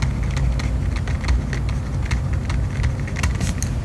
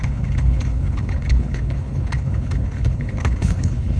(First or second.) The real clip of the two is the first